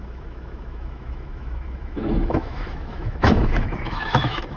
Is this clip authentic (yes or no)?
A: no